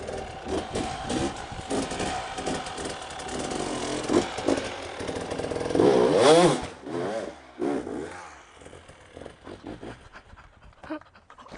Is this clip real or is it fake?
real